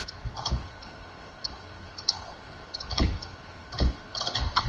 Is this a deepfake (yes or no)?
yes